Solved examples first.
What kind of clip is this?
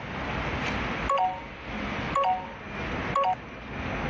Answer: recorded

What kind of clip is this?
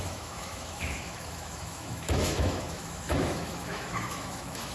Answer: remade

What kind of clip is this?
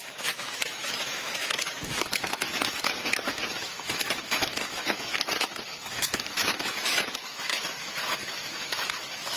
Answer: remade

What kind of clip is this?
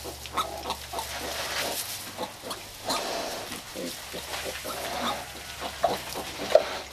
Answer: recorded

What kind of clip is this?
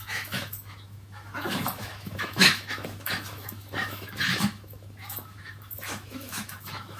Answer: remade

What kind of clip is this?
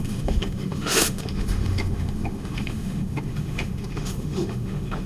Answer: remade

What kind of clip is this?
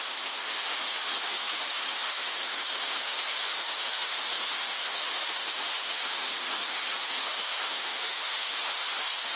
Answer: remade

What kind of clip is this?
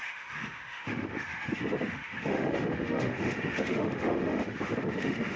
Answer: remade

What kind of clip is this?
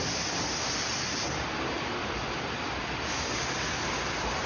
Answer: recorded